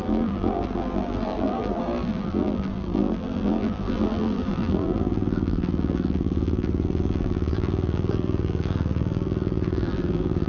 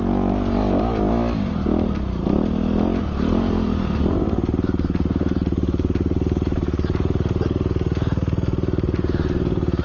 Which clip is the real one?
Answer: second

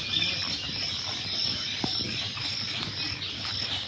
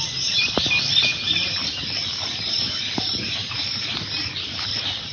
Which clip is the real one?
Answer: first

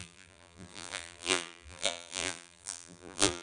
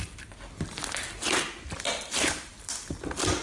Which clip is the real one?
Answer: second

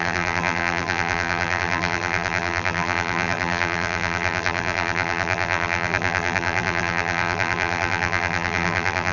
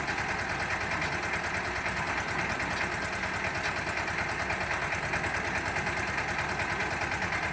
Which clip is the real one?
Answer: second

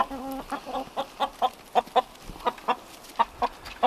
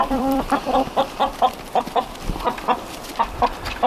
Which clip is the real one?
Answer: first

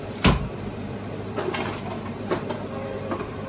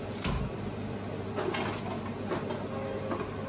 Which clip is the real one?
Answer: second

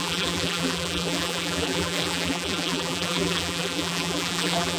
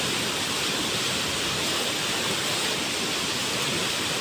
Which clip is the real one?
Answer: second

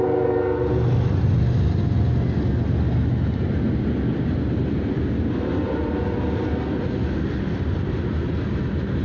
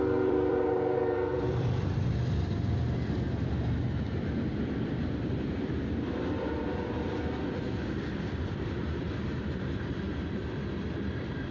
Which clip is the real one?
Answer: first